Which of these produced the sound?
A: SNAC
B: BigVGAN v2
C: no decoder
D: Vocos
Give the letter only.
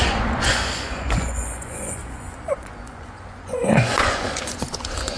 D